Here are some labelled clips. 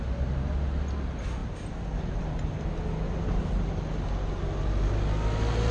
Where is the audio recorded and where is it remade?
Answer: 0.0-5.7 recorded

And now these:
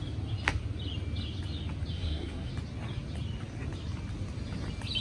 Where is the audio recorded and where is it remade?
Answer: 0.0-1.9 recorded; 1.9-2.5 remade; 2.5-5.0 recorded

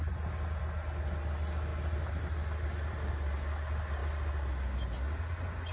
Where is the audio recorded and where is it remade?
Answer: 0.0-5.7 recorded

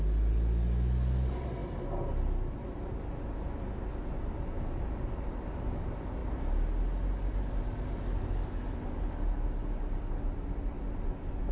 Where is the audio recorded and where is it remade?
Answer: 0.0-11.5 recorded

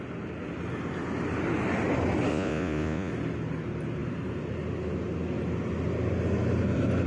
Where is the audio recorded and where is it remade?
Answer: 0.0-2.3 recorded; 2.3-3.1 remade; 3.1-7.1 recorded